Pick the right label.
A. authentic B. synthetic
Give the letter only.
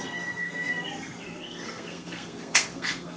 B